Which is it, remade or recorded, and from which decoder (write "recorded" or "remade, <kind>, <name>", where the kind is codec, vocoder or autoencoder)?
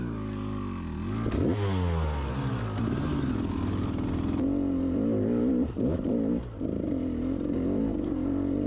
recorded